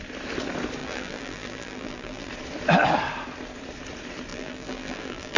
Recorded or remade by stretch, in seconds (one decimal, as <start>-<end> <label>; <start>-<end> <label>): 0.0-0.8 recorded; 0.8-2.3 remade; 2.3-4.3 recorded; 4.3-5.4 remade